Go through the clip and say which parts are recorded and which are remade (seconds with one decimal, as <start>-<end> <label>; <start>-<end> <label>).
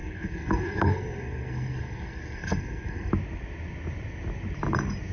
0.0-3.1 remade; 3.1-5.1 recorded